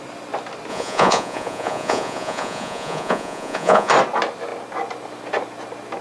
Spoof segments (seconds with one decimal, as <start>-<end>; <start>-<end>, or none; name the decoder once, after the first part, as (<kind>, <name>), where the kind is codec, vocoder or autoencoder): 0.7-3.9 (vocoder, Vocos)